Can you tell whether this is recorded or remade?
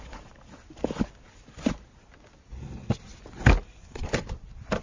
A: recorded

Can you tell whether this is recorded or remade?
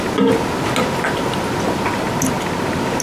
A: recorded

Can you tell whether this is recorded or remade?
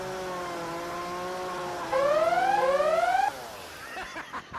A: recorded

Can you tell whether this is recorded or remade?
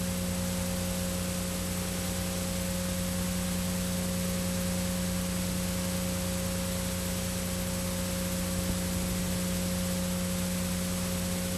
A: recorded